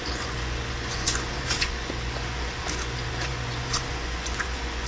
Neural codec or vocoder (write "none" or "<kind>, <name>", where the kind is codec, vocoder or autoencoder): vocoder, Vocos